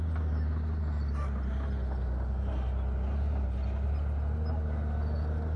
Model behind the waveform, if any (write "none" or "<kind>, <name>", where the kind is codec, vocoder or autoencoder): none